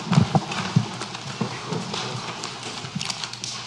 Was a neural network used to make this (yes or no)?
no